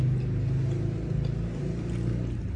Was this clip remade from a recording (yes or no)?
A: no